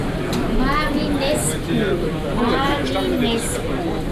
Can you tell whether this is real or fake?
real